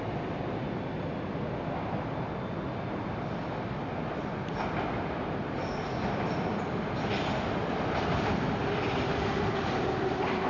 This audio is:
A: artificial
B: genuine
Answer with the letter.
B